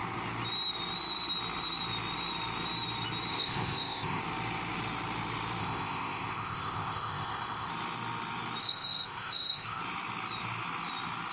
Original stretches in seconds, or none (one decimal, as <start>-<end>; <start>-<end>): 0.0-3.3; 4.2-5.6; 7.7-8.6; 9.8-11.3